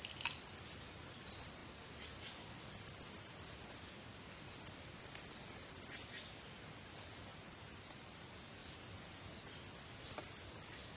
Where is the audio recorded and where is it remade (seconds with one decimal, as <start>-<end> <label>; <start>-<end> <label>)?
0.0-7.3 recorded; 7.3-8.2 remade; 8.2-11.0 recorded

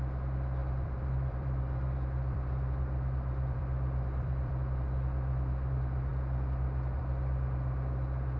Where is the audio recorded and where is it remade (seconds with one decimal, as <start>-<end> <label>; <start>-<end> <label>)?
0.0-0.6 recorded; 0.6-4.5 remade; 4.5-8.4 recorded

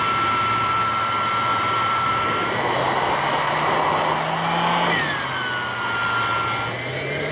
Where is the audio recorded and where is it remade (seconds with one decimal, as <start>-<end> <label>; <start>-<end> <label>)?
0.0-1.5 recorded; 1.5-3.7 remade; 3.7-7.3 recorded

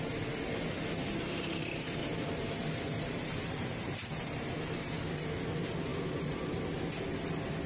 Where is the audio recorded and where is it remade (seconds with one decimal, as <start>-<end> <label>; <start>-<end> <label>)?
0.0-1.0 recorded; 1.0-5.0 remade; 5.0-7.7 recorded

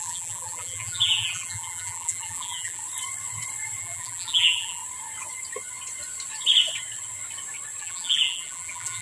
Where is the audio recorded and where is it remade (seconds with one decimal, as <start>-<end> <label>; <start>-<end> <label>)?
0.0-2.8 remade; 2.8-3.8 recorded; 3.8-4.8 remade; 4.8-7.8 recorded; 7.8-9.0 remade